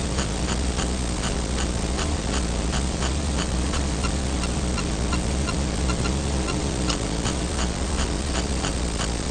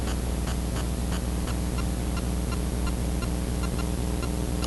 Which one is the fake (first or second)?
first